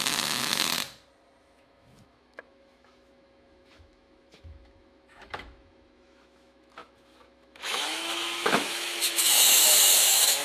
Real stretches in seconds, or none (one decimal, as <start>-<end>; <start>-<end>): 0.7-1.4